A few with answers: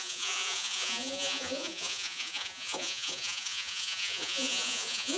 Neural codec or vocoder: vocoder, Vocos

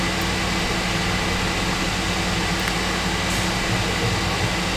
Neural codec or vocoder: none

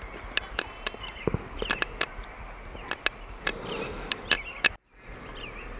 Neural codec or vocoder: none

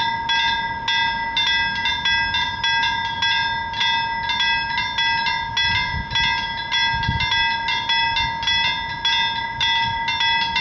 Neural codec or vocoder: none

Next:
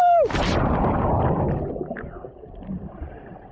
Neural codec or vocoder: none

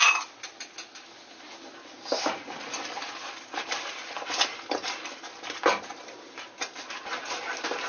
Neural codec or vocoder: none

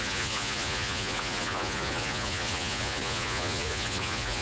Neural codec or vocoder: vocoder, Vocos